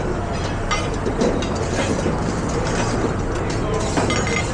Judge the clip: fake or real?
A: real